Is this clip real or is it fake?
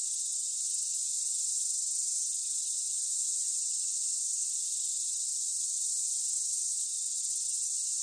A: real